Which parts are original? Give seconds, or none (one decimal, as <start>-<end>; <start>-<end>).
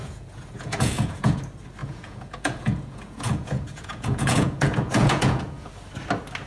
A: 1.4-1.8; 5.7-6.5